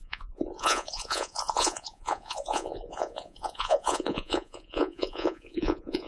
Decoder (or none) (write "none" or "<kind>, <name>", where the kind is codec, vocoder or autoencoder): vocoder, Vocos